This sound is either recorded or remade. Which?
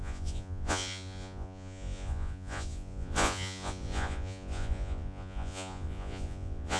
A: remade